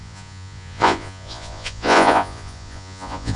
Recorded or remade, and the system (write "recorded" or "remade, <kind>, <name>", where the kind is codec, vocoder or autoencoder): remade, vocoder, Vocos